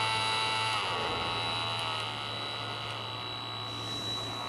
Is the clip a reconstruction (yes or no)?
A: no